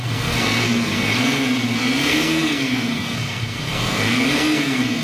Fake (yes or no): yes